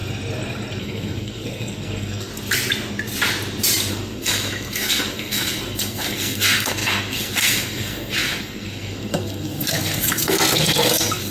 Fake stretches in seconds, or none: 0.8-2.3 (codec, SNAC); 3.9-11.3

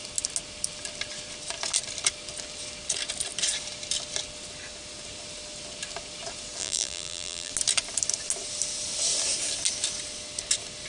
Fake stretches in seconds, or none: 6.6-7.5 (vocoder, BigVGAN v2)

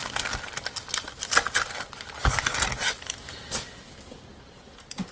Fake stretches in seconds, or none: none

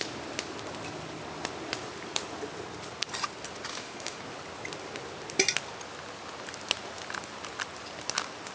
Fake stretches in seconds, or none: 3.7-4.2 (autoencoder, DAC-VAE)

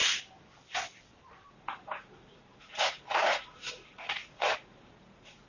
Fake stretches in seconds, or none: 1.5-5.5 (vocoder, Vocos)

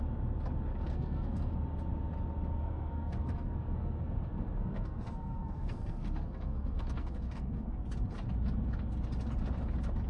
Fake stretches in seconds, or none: 0.7-1.5 (codec, SNAC); 2.6-7.7

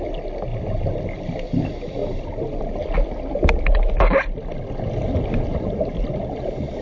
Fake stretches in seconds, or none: none